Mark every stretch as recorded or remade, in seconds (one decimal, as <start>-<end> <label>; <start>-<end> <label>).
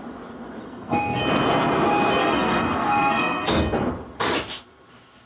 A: 0.0-0.6 recorded; 0.6-1.2 remade; 1.2-2.2 recorded; 2.2-3.6 remade; 3.6-5.3 recorded